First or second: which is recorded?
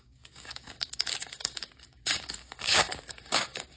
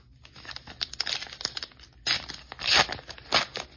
second